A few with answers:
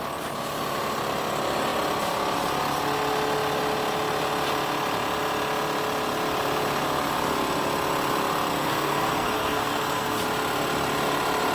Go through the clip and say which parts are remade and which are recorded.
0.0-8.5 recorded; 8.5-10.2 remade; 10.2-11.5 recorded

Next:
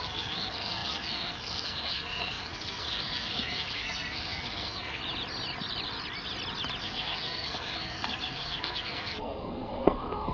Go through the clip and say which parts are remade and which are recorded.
0.0-5.0 remade; 5.0-6.8 recorded; 6.8-10.3 remade